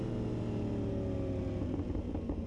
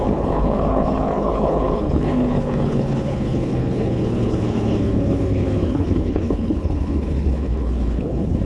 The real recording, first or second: first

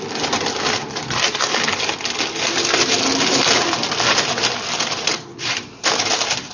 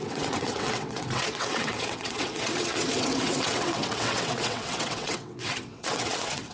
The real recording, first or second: first